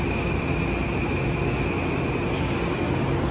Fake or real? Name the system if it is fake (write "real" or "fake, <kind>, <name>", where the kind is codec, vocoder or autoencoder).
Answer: real